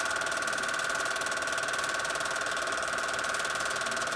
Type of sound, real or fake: real